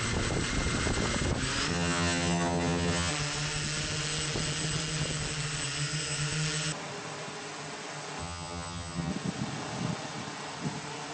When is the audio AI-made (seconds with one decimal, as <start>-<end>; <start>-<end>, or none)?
1.7-3.1; 8.2-9.1